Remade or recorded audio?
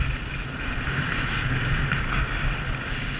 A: recorded